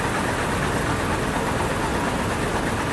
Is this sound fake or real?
real